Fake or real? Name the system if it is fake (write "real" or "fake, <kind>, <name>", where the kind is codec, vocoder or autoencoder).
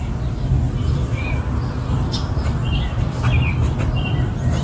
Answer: real